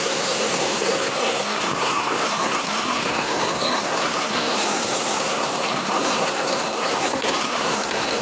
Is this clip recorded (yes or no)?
no